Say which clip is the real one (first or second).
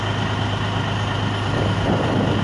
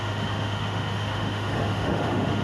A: first